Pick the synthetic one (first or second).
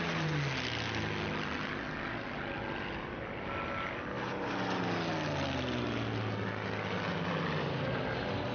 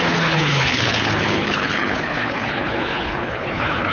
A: second